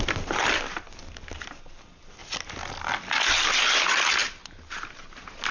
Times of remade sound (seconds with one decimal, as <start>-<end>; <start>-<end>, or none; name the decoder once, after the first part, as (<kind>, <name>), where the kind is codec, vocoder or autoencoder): none